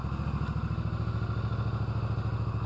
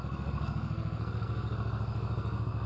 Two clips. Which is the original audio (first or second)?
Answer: first